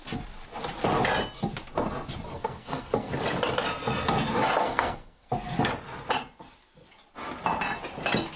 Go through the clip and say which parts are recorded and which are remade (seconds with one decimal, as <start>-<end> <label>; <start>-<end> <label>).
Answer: 0.0-2.3 recorded; 2.3-3.1 remade; 3.1-4.6 recorded; 4.6-5.3 remade; 5.3-8.4 recorded